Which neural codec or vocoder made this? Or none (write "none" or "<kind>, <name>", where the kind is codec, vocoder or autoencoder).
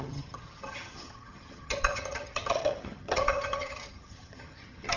vocoder, HiFi-GAN